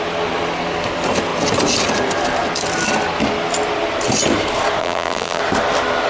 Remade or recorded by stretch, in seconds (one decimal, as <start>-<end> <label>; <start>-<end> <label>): 0.0-4.8 recorded; 4.8-5.4 remade; 5.4-6.1 recorded